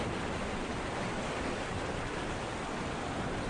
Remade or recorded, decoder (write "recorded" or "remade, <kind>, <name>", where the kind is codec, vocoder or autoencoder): recorded